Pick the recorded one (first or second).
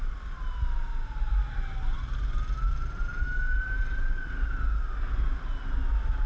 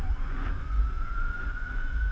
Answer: first